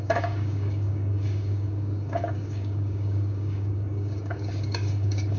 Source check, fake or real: fake